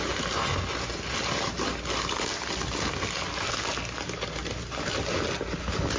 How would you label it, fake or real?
real